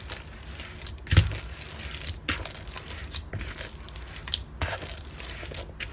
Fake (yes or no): no